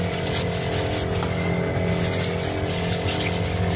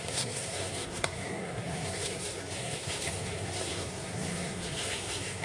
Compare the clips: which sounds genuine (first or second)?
first